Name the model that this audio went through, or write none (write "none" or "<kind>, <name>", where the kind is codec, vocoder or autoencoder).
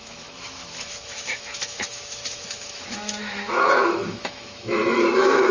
autoencoder, DAC-VAE